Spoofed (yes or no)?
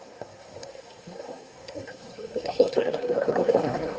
yes